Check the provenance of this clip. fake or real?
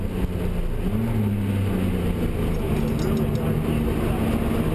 real